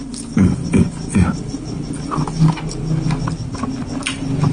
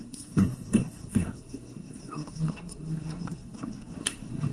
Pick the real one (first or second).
first